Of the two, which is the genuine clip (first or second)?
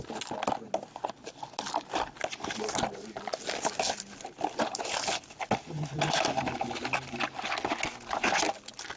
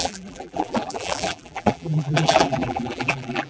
first